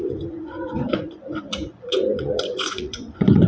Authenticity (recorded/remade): remade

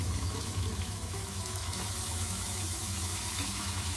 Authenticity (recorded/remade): remade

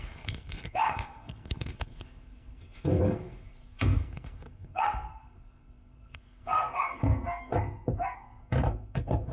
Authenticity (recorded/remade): remade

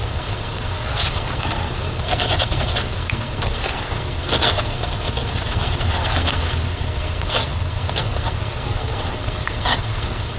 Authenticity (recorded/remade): remade